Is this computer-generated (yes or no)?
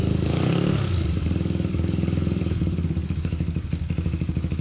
yes